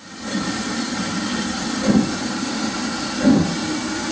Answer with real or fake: real